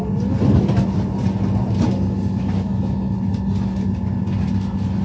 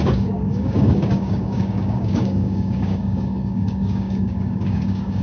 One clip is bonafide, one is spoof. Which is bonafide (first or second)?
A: first